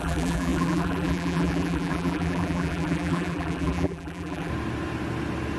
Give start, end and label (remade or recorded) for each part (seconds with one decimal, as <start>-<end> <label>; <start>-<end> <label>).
0.0-4.5 remade; 4.5-5.6 recorded